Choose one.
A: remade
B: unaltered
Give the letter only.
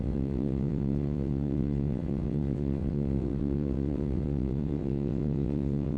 A